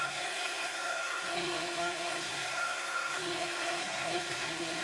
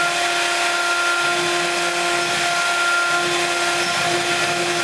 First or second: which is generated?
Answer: first